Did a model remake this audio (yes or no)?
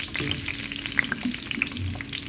no